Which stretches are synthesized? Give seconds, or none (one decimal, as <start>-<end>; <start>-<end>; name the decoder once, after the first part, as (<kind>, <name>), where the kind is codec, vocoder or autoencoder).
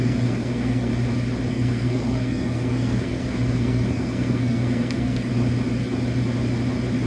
0.0-0.9 (codec, SNAC); 1.5-5.3